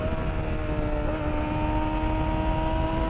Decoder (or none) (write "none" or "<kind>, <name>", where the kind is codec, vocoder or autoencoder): none